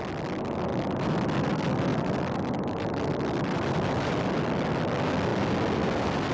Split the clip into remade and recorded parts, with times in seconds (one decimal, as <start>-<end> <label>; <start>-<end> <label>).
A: 0.0-0.7 recorded; 0.7-1.5 remade; 1.5-1.9 recorded; 1.9-4.7 remade; 4.7-6.3 recorded